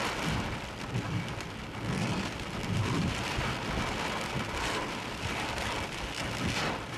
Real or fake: real